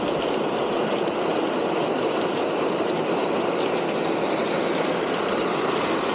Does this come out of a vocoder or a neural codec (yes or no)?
no